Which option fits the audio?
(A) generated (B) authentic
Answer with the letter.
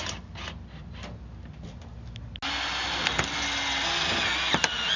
B